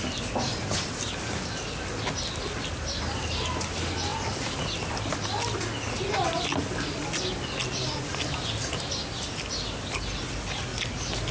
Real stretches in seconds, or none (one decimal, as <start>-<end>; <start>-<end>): 0.0-11.3